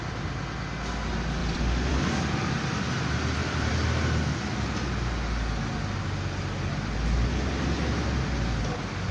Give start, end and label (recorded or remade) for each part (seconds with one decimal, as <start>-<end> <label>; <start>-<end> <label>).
0.0-1.4 recorded; 1.4-3.0 remade; 3.0-3.4 recorded; 3.4-4.4 remade; 4.4-9.1 recorded